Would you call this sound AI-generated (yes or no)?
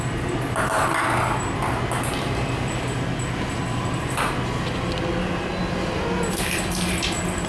no